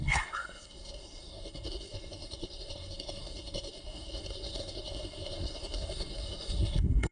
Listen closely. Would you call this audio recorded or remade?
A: remade